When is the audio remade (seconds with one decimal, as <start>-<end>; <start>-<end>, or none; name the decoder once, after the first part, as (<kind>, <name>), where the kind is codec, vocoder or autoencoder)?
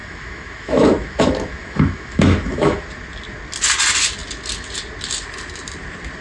0.0-2.8 (autoencoder, DAC-VAE)